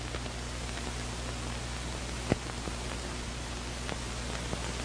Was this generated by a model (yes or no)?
no